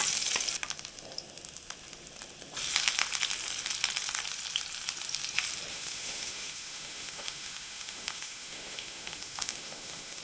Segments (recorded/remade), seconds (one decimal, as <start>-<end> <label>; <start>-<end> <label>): 0.0-5.7 recorded; 5.7-10.2 remade